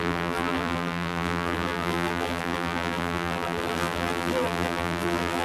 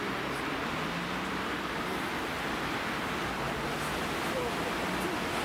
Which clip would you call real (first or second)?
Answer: second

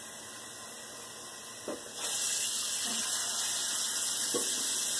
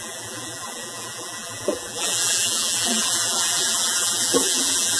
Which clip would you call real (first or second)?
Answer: first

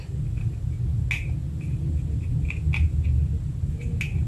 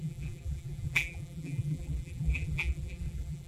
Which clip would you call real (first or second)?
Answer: first